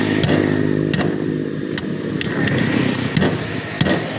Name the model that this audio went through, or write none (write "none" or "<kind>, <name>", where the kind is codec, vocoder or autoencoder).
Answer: none